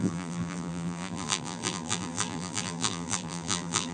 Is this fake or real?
fake